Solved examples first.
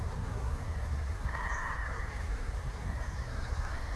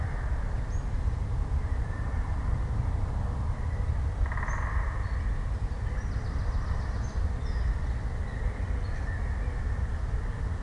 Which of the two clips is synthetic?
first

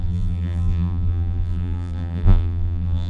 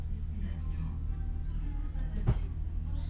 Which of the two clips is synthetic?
first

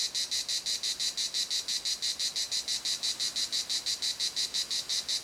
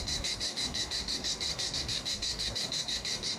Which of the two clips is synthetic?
second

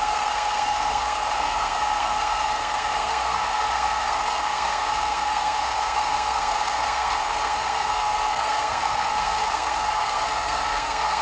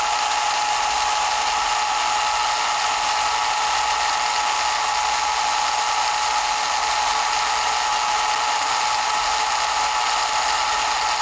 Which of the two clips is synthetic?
first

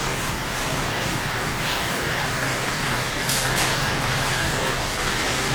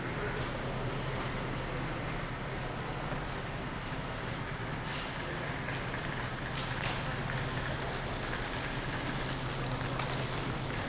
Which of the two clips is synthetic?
first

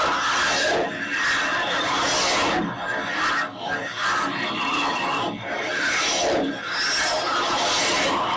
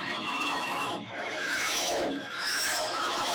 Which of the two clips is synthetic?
second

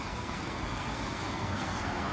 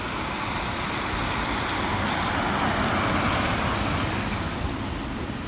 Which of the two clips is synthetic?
first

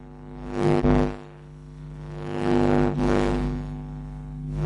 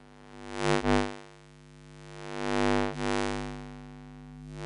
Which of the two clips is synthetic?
first